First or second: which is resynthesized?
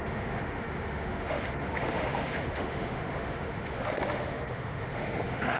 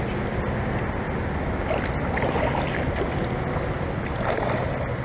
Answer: first